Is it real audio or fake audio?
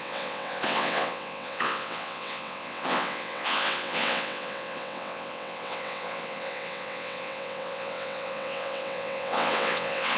fake